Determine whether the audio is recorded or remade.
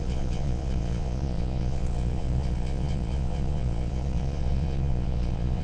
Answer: remade